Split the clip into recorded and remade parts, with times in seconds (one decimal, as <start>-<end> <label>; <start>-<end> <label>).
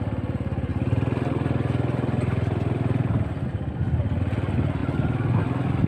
0.0-5.9 recorded